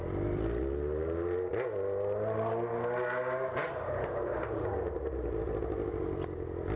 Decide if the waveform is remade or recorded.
recorded